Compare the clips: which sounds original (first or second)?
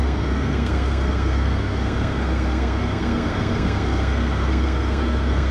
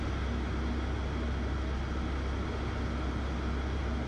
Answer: second